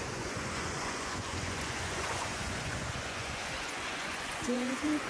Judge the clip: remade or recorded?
remade